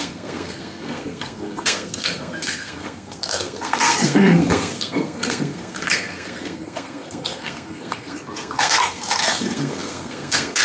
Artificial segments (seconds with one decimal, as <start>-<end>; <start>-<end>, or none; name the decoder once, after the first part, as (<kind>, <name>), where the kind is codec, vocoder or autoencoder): 0.0-10.6 (codec, SNAC)